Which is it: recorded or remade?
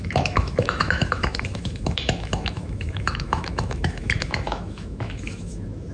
remade